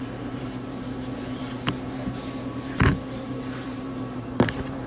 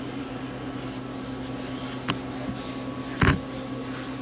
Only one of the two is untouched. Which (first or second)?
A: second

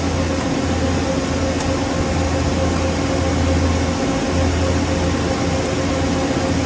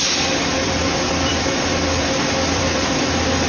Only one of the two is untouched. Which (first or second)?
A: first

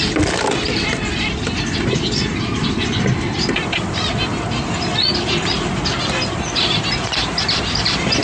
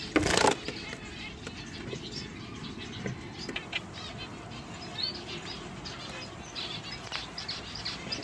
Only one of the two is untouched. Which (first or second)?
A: second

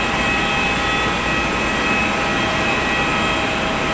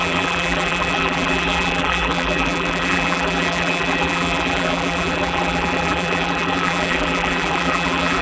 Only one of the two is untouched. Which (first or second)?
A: first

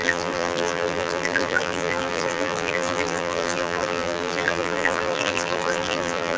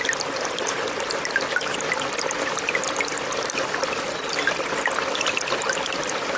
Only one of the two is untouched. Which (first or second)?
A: second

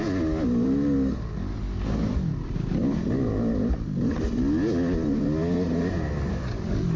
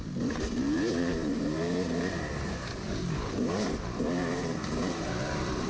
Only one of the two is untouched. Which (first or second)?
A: first